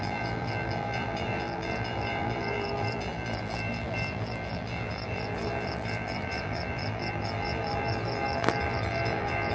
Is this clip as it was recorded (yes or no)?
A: no